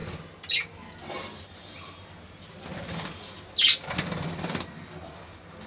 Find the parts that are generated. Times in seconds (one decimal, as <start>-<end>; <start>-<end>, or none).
none